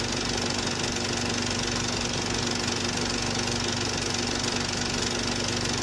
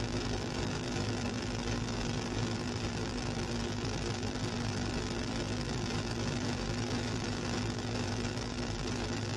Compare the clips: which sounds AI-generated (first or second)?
second